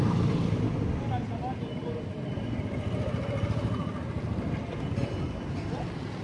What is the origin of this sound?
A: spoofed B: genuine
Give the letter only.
B